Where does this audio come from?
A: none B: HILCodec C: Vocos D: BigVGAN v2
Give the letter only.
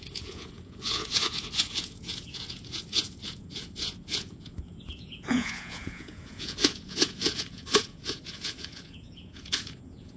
C